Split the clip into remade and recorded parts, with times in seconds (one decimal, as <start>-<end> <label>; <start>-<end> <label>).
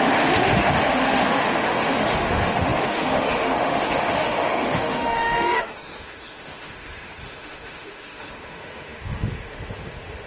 0.0-10.3 remade